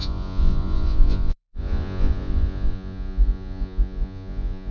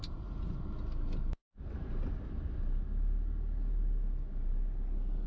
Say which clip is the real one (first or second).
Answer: second